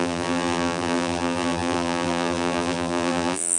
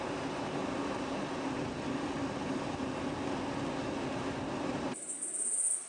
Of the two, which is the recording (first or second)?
second